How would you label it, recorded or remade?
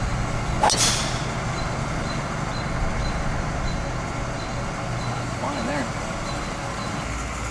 recorded